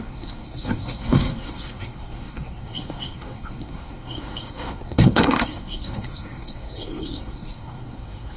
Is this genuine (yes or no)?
no